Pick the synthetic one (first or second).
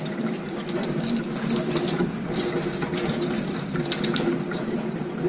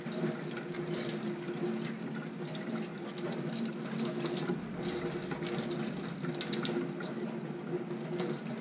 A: first